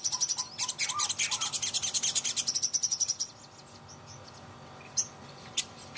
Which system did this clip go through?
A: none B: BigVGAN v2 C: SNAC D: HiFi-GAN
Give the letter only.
A